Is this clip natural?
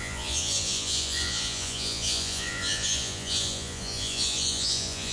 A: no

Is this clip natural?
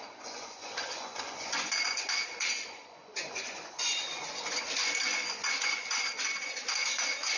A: no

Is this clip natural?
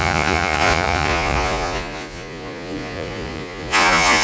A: no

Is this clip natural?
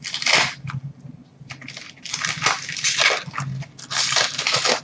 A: yes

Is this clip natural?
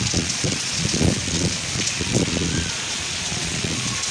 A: no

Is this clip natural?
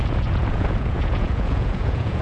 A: no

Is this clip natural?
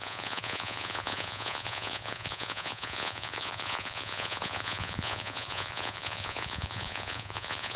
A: no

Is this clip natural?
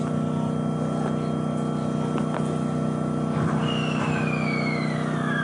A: yes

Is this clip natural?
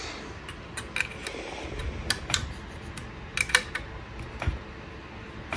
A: yes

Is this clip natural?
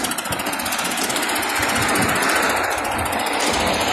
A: yes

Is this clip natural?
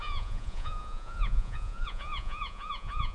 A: no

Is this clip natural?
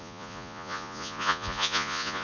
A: no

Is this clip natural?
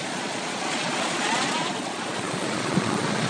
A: no